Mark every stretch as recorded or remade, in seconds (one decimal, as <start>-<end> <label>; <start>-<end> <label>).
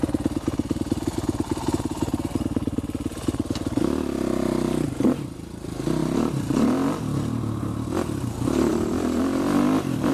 0.0-6.0 recorded; 6.0-7.3 remade; 7.3-10.1 recorded